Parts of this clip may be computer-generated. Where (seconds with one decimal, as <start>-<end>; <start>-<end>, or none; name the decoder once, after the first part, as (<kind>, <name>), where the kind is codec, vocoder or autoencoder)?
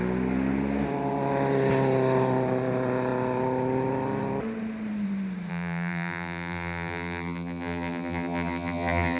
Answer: 5.5-9.2 (vocoder, BigVGAN v2)